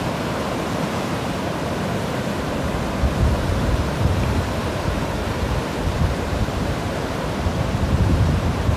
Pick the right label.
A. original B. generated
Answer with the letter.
B